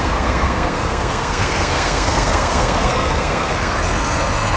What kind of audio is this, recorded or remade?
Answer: remade